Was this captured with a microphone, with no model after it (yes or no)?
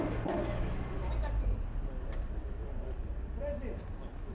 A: yes